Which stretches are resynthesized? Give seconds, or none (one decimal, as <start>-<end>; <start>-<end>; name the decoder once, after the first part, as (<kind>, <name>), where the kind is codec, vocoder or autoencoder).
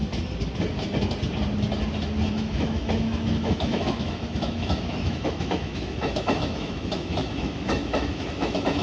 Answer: 2.3-8.8 (autoencoder, DAC-VAE)